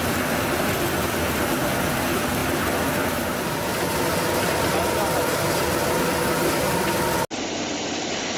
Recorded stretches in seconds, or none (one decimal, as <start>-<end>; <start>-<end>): 0.0-8.4

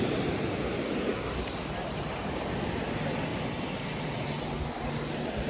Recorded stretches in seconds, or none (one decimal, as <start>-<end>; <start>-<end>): 0.0-5.5

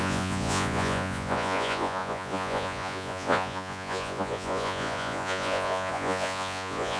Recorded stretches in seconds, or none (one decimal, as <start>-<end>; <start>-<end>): none

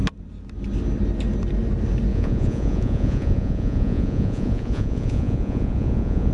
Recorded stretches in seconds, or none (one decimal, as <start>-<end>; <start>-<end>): 0.0-2.1

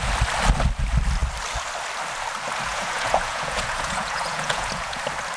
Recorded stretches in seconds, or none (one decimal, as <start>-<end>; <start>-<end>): 0.0-2.7; 5.0-5.4

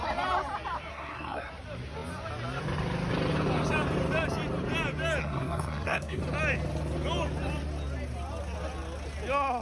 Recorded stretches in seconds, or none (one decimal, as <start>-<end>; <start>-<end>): 0.0-0.9; 1.5-5.2; 6.2-9.6